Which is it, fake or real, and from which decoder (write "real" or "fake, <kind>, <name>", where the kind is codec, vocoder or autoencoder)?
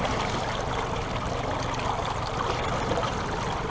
real